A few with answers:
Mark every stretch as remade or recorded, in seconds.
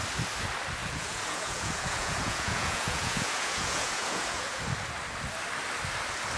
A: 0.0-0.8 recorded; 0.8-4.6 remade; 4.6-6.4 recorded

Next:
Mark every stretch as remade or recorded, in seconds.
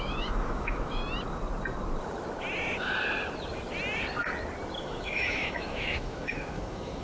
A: 0.0-1.0 remade; 1.0-4.8 recorded; 4.8-7.0 remade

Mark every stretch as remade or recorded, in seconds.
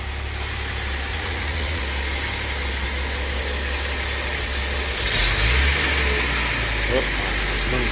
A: 0.0-1.1 recorded; 1.1-1.8 remade; 1.8-7.9 recorded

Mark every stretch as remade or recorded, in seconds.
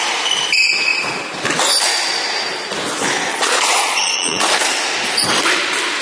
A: 0.0-3.3 recorded; 3.3-4.4 remade; 4.4-6.0 recorded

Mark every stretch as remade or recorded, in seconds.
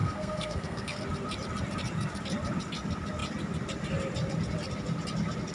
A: 0.0-1.0 remade; 1.0-5.5 recorded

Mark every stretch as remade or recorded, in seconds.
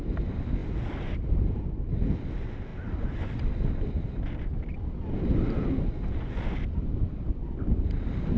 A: 0.0-8.4 recorded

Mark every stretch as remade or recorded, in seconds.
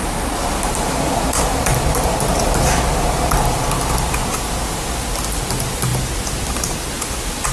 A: 0.0-7.5 recorded